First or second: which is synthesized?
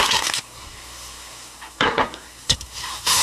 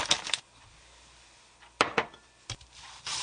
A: first